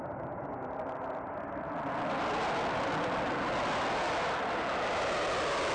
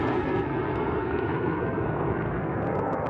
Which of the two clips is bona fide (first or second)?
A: first